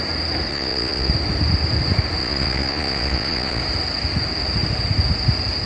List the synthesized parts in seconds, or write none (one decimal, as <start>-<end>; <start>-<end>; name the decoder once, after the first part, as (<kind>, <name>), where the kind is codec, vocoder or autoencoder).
0.5-1.1 (vocoder, Vocos); 2.2-3.6